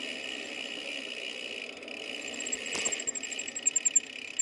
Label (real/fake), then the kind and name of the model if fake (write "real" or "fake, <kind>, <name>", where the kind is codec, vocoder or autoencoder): real